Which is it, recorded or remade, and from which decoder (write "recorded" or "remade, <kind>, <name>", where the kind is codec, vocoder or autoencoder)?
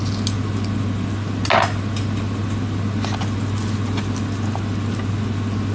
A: recorded